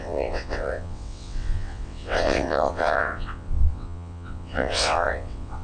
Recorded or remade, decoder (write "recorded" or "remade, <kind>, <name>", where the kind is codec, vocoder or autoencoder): remade, vocoder, WaveNeXt